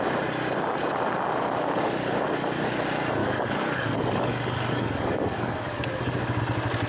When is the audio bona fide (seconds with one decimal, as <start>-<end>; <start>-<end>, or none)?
0.0-3.2; 6.4-6.9